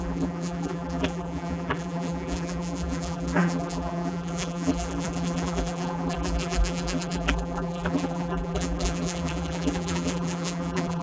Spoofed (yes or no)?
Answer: yes